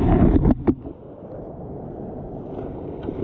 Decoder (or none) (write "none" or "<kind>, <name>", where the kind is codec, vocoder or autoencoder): none